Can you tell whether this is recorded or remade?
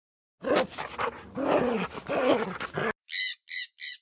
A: recorded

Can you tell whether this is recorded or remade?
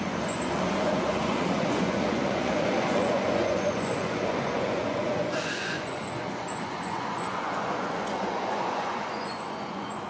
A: remade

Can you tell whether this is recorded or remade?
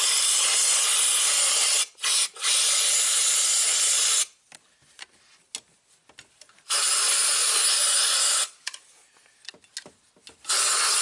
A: recorded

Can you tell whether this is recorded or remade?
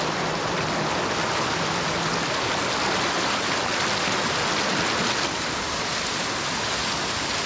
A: recorded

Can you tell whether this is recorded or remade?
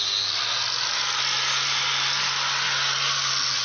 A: recorded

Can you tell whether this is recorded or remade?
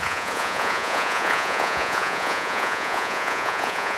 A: remade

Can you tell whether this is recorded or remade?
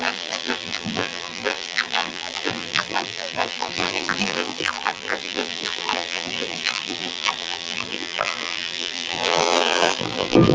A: remade